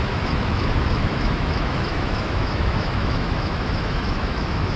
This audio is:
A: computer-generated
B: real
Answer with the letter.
A